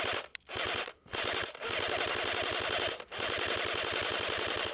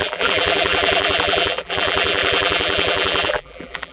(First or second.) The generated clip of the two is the second